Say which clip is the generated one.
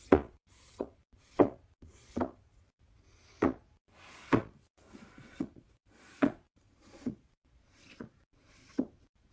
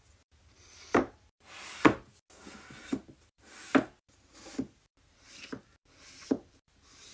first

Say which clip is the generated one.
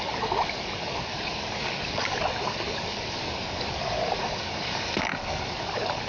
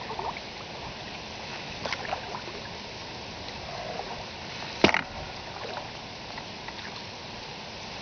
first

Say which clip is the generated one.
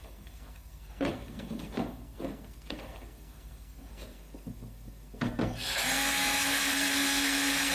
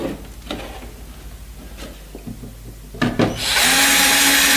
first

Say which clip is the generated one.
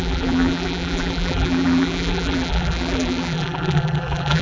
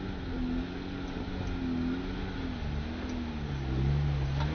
first